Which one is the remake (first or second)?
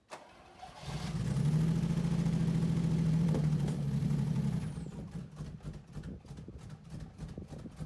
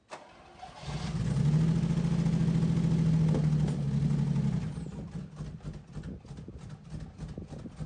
first